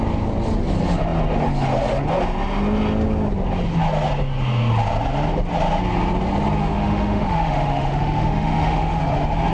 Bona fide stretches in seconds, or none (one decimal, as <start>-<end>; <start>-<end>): 0.0-6.6; 9.0-9.5

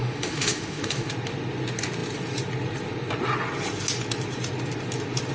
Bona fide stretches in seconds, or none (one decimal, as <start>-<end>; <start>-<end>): 1.1-5.3

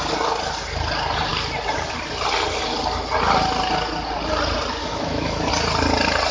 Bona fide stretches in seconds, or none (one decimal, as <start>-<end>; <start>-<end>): 0.0-4.8; 5.5-6.3

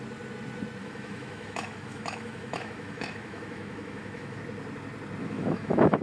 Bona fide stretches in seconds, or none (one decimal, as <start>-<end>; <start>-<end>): 0.0-0.8; 4.4-5.2

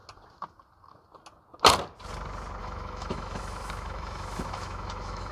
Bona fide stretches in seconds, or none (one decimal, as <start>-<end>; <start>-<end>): 0.0-2.6

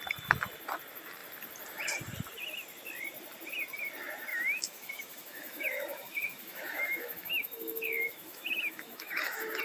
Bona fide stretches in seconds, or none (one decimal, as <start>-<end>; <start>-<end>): 0.0-4.3